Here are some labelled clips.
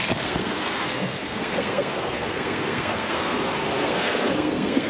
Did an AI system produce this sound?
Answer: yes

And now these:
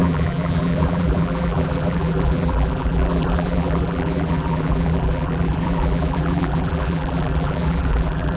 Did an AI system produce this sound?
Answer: yes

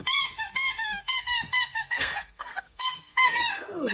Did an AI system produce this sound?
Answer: yes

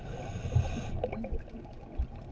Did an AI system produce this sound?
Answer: no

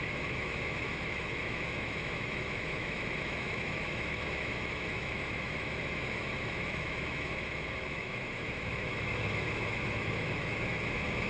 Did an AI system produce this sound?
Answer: yes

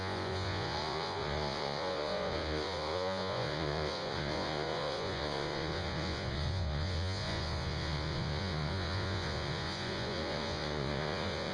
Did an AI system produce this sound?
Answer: yes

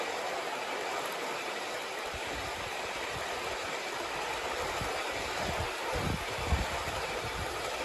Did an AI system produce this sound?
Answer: yes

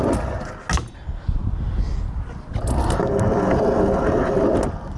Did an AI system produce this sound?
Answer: no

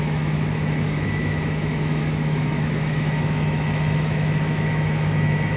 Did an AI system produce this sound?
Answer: yes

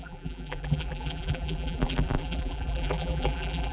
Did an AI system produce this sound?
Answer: yes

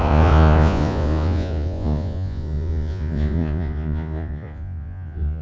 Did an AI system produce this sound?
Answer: yes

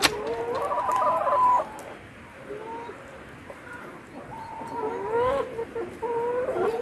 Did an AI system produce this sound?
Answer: no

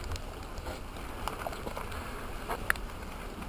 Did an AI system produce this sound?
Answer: no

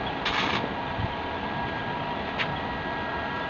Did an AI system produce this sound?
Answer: no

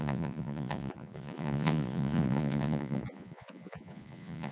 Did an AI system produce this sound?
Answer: yes